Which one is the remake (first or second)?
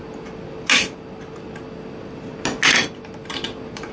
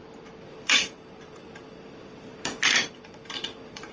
second